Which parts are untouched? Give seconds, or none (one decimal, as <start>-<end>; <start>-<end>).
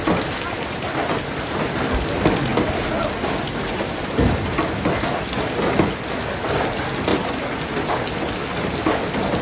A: 0.0-9.4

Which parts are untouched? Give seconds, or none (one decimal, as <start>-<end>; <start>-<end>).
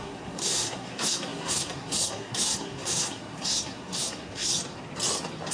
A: 4.5-5.5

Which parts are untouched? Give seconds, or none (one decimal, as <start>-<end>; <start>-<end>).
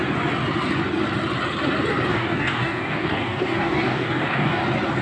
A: 0.0-2.1; 4.6-5.0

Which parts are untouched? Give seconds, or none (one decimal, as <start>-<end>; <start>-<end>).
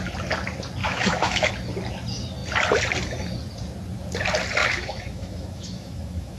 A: 0.0-0.8; 1.5-4.6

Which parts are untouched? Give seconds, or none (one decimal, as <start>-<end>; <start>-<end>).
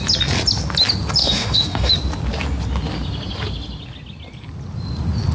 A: 0.0-1.2; 1.9-5.3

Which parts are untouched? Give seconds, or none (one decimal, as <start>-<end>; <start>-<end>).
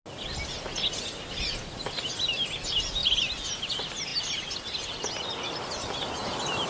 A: 0.0-6.7